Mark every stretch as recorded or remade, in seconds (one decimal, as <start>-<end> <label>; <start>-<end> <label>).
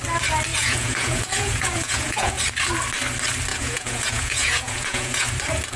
0.0-0.5 recorded; 0.5-2.4 remade; 2.4-3.5 recorded; 3.5-5.3 remade; 5.3-5.8 recorded